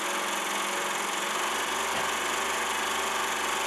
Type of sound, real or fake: real